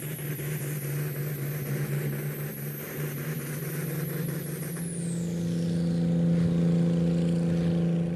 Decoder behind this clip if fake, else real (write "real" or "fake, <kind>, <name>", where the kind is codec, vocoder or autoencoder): real